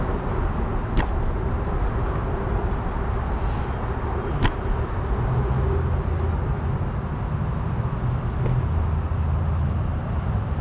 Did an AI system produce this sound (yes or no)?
no